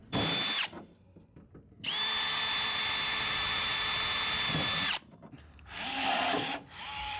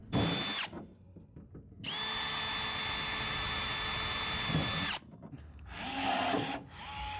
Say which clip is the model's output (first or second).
first